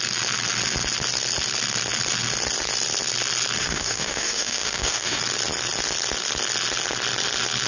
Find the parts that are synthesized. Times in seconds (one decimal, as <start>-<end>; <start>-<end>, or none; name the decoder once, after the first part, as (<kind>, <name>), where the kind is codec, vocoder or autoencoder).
3.6-5.2 (codec, DAC)